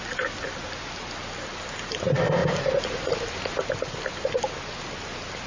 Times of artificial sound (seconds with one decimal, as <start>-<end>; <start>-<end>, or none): 2.4-3.6